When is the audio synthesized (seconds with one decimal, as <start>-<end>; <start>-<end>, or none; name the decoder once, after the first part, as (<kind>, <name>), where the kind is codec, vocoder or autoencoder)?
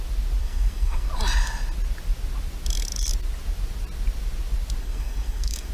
0.4-1.1 (codec, SNAC); 4.8-5.7